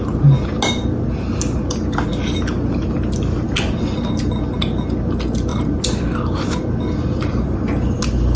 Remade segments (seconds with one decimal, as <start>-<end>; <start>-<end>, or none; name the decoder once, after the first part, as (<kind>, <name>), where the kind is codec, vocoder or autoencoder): 5.5-7.6 (vocoder, BigVGAN v2)